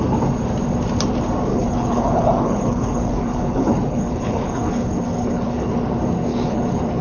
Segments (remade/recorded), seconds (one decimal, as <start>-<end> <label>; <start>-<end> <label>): 0.0-1.5 recorded; 1.5-5.7 remade; 5.7-6.3 recorded; 6.3-7.0 remade